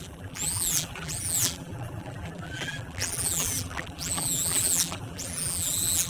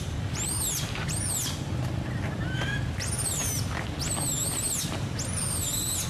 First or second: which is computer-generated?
first